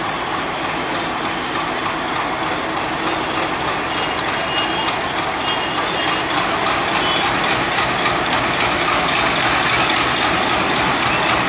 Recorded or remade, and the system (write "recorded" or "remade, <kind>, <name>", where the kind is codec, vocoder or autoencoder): recorded